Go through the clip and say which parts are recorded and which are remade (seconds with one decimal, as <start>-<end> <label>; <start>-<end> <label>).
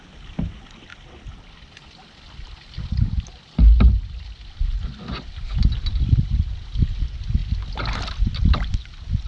0.0-9.3 recorded